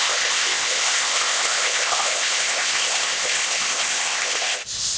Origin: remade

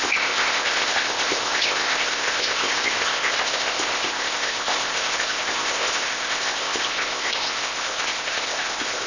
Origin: remade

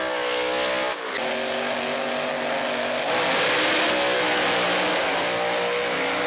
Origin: recorded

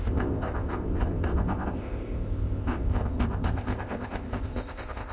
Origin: remade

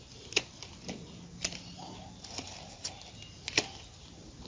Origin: recorded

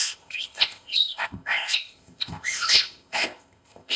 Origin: remade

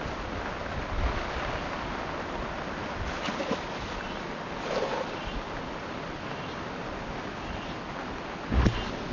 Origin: recorded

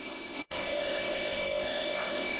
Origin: remade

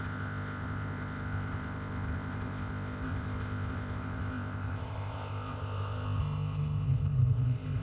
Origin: remade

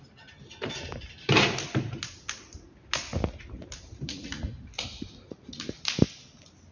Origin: recorded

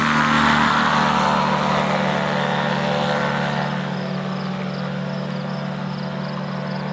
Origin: recorded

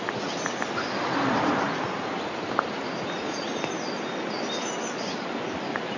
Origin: recorded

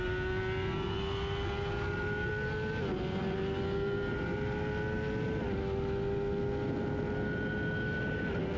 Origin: recorded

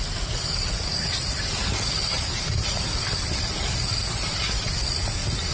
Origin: recorded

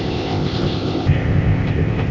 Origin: remade